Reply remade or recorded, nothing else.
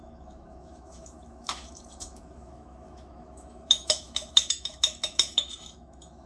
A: remade